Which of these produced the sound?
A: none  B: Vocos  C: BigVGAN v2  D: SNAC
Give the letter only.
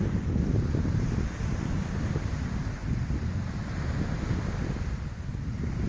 A